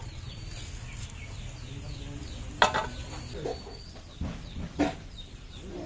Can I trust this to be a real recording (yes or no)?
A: yes